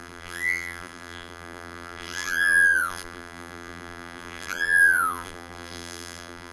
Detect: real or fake fake